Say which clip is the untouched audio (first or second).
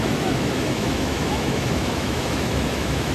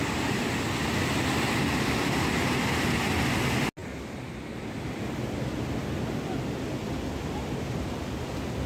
second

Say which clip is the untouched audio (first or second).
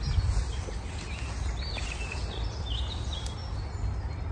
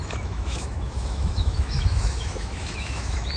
first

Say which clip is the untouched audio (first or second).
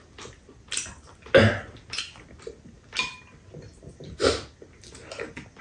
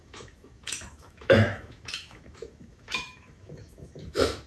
first